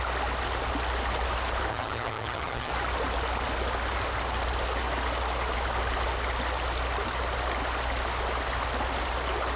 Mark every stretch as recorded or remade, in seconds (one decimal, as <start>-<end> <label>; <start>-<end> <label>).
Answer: 0.0-1.7 recorded; 1.7-2.7 remade; 2.7-9.6 recorded